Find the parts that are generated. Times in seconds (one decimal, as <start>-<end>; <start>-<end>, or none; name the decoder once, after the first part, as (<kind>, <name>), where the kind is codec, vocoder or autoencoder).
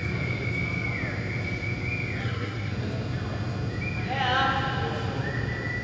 2.2-2.7 (codec, SNAC)